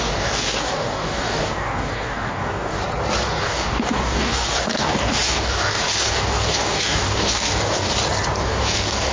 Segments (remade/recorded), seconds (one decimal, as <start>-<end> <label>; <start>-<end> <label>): 0.0-2.8 remade; 2.8-3.4 recorded; 3.4-7.9 remade; 7.9-8.4 recorded; 8.4-9.1 remade